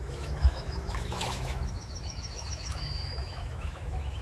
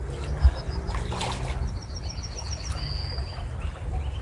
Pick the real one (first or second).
second